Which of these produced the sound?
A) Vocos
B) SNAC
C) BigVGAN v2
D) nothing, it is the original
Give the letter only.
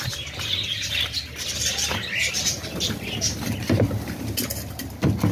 D